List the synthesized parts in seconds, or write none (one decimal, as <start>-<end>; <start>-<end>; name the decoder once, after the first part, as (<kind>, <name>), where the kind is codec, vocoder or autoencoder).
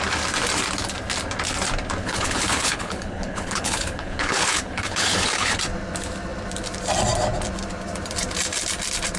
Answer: 2.0-5.6 (codec, HILCodec)